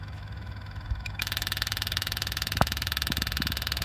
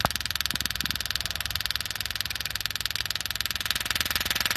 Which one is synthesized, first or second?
first